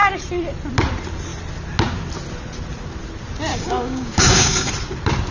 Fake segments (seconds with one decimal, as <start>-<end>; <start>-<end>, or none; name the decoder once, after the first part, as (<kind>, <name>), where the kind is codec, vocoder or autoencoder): 3.5-4.7 (codec, DAC)

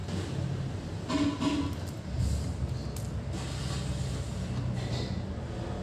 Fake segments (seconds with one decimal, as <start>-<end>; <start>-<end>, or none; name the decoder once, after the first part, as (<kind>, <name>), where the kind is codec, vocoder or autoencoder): none

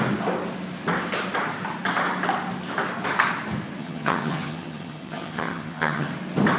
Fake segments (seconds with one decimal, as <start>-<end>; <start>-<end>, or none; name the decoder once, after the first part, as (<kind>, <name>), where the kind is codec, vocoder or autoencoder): 3.8-6.1 (vocoder, HiFi-GAN)

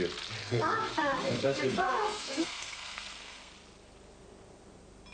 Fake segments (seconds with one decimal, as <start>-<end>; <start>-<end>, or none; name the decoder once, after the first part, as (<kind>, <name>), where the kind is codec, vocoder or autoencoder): 0.4-3.5 (codec, SNAC)